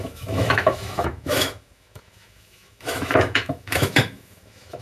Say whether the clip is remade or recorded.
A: remade